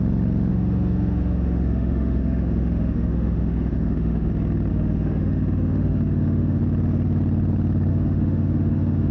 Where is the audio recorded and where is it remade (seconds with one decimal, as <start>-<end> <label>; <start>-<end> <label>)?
0.0-0.5 recorded; 0.5-4.3 remade; 4.3-4.7 recorded; 4.7-6.6 remade; 6.6-7.9 recorded; 7.9-9.1 remade